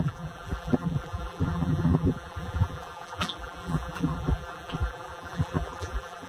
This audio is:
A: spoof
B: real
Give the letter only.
A